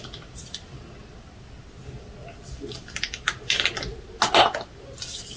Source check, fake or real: real